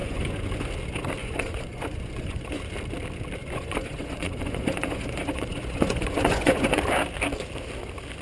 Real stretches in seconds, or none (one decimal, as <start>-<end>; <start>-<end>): 0.7-1.2; 2.6-3.4; 6.8-8.2

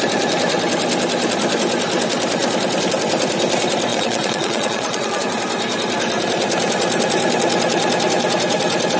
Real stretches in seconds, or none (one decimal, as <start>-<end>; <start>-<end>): 0.0-3.9; 5.2-9.0